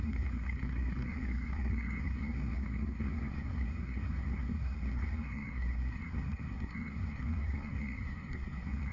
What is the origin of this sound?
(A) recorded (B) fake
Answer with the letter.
B